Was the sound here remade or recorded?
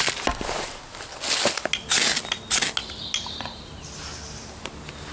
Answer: recorded